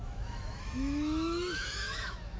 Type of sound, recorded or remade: remade